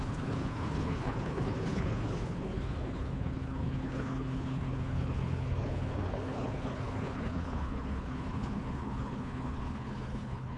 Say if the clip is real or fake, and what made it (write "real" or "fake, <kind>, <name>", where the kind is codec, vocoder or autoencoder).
fake, codec, HILCodec